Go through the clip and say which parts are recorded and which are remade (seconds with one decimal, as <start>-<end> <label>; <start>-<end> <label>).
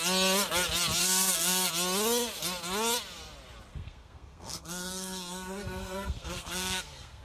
0.0-1.0 recorded; 1.0-1.7 remade; 1.7-3.7 recorded; 3.7-7.2 remade